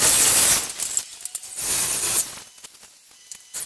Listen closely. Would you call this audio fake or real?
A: real